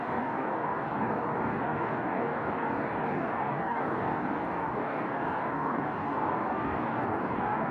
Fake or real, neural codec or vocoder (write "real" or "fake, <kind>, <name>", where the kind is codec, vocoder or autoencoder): fake, codec, DAC